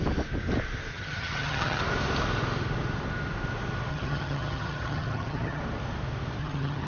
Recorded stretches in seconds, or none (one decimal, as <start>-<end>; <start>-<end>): 0.0-0.9; 1.8-3.9; 5.6-6.4